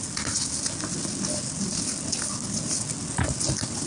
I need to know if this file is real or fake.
real